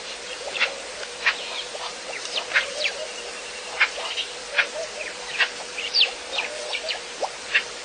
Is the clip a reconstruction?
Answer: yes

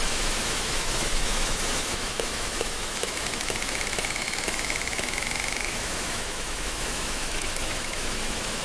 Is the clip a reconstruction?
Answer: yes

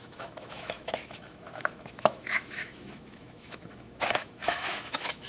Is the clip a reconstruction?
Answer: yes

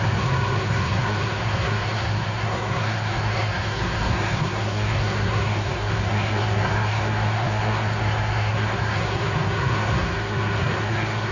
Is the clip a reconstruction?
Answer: yes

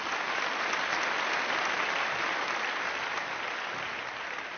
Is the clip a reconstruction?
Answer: no